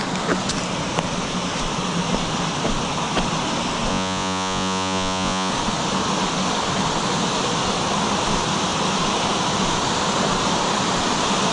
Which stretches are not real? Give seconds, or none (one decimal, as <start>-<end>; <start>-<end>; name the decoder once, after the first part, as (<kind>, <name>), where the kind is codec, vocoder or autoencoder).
3.9-5.5 (vocoder, Vocos)